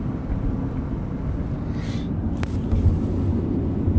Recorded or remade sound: recorded